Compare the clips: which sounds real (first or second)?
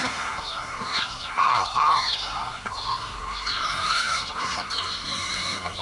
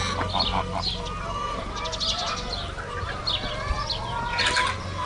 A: second